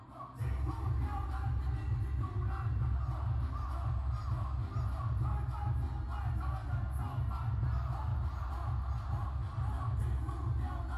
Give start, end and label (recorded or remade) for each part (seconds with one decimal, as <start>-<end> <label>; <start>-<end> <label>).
0.0-11.0 recorded